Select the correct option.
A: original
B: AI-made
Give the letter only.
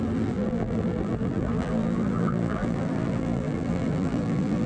B